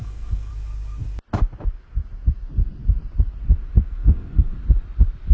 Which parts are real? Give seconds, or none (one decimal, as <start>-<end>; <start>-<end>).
0.5-3.7; 4.5-5.3

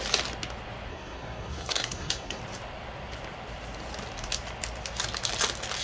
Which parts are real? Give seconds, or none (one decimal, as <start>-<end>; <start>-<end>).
0.0-0.9; 2.4-5.8